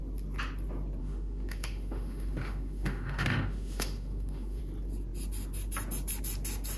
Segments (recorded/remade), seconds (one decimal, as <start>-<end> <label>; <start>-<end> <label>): 0.0-1.0 recorded; 1.0-4.6 remade; 4.6-6.8 recorded